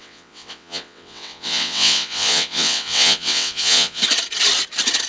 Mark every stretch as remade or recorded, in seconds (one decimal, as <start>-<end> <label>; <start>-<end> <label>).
0.0-4.0 remade; 4.0-5.1 recorded